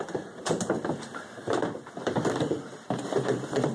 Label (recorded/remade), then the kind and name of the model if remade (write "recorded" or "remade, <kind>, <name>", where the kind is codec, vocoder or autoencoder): remade, vocoder, BigVGAN v2